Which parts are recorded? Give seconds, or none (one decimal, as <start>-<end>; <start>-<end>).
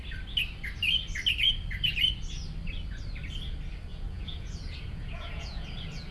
0.0-3.9